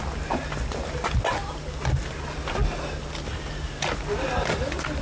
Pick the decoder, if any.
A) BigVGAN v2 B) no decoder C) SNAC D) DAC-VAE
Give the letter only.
B